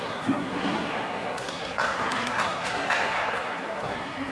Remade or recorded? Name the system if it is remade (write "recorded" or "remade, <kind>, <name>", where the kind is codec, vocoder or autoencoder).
remade, codec, SNAC